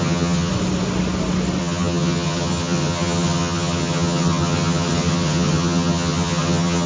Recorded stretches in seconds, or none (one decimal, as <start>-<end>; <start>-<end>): 0.5-1.6